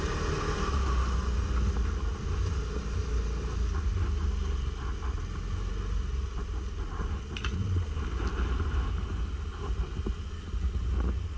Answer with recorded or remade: recorded